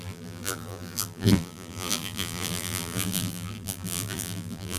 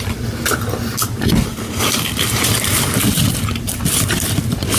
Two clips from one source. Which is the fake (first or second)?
first